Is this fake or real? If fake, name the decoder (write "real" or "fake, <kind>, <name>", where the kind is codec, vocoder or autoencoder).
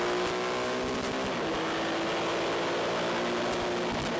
real